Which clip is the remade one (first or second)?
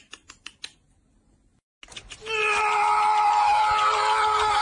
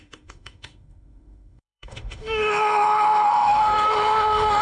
second